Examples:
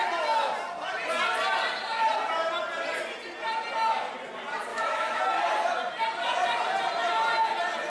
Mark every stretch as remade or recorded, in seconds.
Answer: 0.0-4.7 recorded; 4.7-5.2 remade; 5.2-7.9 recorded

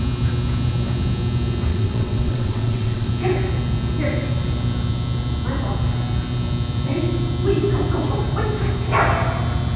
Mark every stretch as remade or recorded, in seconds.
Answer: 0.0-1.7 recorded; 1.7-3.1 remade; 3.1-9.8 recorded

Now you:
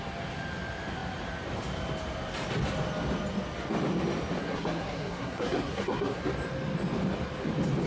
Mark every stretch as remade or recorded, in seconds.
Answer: 0.0-4.4 recorded; 4.4-6.2 remade; 6.2-7.9 recorded